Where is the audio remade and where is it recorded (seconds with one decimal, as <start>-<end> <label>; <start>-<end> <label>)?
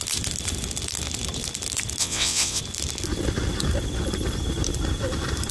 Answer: 0.0-2.0 recorded; 2.0-2.6 remade; 2.6-5.5 recorded